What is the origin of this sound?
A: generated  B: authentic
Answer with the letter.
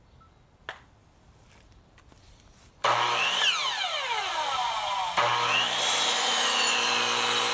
A